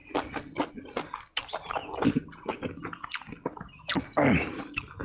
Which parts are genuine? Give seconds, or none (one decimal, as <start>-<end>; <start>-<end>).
0.0-5.0